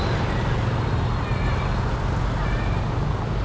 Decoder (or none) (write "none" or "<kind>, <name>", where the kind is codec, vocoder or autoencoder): none